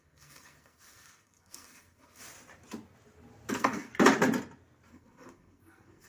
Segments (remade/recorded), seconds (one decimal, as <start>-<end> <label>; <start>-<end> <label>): 0.0-2.2 remade; 2.2-3.5 recorded; 3.5-3.9 remade; 3.9-4.9 recorded; 4.9-6.1 remade